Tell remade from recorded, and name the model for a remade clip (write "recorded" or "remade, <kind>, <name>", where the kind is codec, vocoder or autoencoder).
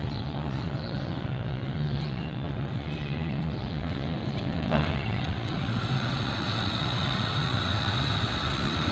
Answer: remade, vocoder, WaveNeXt